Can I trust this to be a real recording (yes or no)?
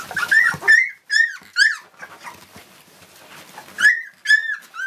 yes